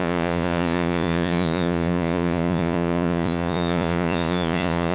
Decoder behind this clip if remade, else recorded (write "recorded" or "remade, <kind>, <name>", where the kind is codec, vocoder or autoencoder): remade, vocoder, Vocos